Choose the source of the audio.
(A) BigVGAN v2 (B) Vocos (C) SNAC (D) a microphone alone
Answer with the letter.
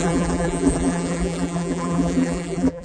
A